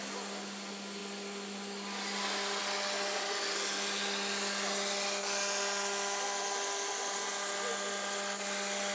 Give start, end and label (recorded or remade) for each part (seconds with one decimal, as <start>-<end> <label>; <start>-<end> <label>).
0.0-8.9 recorded